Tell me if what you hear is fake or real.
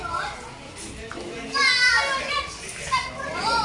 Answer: real